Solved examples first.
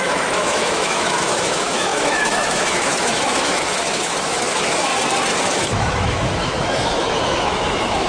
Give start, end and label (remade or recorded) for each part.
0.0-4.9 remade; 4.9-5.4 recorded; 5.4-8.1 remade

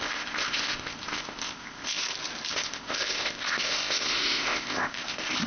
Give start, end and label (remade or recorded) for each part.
0.0-2.0 remade; 2.0-2.5 recorded; 2.5-5.5 remade

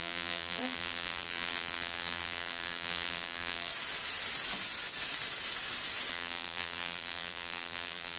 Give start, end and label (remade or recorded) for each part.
0.0-3.7 remade; 3.7-6.1 recorded; 6.1-8.2 remade

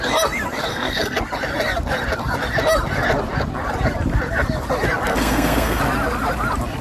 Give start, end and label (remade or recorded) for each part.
0.0-0.7 recorded; 0.7-1.2 remade; 1.2-5.1 recorded; 5.1-5.8 remade; 5.8-6.8 recorded